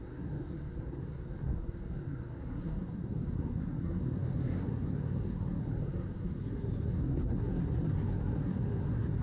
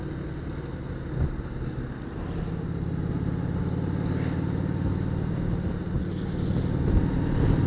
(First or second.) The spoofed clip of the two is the first